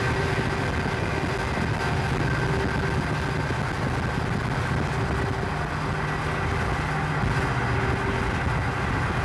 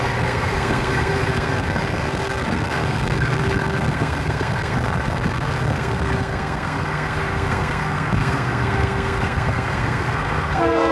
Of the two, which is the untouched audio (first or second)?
first